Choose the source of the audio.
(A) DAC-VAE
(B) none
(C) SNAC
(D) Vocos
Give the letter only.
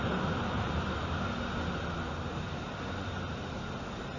B